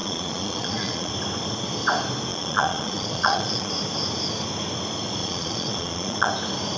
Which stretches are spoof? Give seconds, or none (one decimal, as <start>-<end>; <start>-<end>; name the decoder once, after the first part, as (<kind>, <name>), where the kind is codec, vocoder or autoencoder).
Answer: 0.0-1.1 (vocoder, Vocos); 2.3-3.7; 5.2-6.3